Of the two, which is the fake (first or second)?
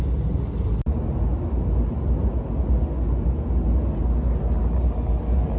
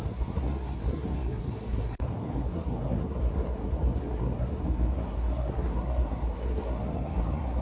second